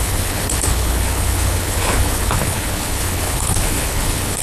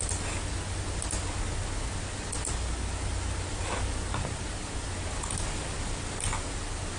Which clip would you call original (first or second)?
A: second